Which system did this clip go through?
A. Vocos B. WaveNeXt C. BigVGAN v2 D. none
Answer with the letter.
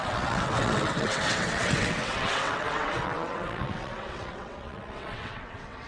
B